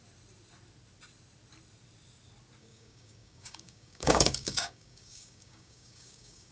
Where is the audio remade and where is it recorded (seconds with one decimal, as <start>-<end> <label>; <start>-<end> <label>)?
0.0-2.6 recorded; 2.6-6.5 remade